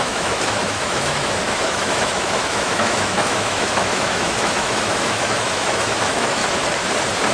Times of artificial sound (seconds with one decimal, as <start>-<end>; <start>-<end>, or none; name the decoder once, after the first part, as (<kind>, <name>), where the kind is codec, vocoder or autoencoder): 0.0-6.4 (autoencoder, DAC-VAE)